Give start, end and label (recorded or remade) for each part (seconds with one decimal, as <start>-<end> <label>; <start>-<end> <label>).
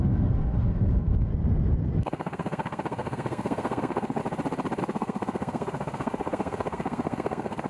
0.0-1.3 remade; 1.3-2.0 recorded; 2.0-4.2 remade; 4.2-4.8 recorded; 4.8-7.7 remade